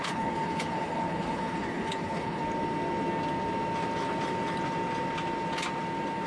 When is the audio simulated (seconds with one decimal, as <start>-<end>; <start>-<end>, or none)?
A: 0.0-2.4